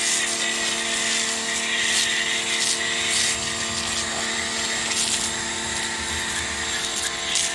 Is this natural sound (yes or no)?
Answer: yes